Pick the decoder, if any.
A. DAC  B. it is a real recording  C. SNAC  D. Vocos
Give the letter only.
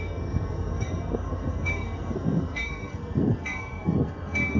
C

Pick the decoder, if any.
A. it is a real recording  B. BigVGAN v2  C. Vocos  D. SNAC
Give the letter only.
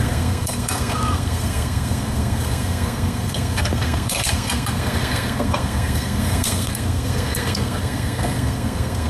D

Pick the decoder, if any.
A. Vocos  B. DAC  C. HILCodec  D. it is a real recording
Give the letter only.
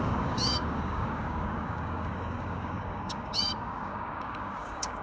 B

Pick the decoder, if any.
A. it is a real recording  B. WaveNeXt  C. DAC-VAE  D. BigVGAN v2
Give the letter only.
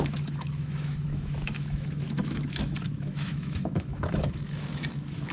C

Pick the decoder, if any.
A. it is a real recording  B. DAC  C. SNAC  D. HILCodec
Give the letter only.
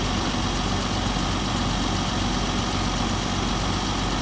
A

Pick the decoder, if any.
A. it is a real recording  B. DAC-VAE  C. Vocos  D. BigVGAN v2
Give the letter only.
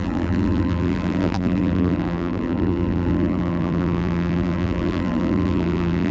D